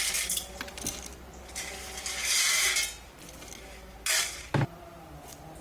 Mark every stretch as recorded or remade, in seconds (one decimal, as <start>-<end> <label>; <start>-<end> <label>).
0.0-5.6 recorded